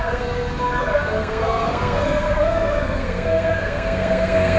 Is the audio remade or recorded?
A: remade